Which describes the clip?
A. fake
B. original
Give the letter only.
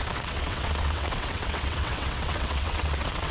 A